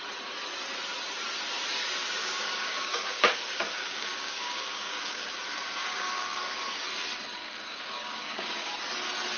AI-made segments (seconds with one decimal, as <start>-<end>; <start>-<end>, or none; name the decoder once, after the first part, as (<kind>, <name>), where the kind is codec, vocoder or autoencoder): 2.2-5.3 (codec, DAC); 5.8-6.4; 7.4-8.7